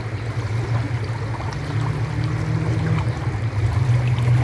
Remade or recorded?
recorded